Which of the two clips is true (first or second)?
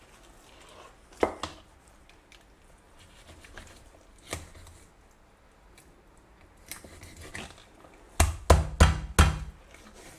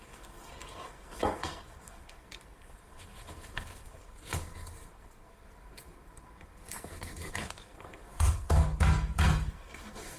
first